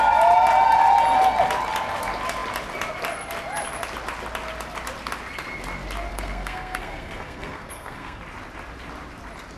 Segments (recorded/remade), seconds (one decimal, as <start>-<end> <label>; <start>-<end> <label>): 0.0-6.1 recorded; 6.1-8.2 remade; 8.2-9.6 recorded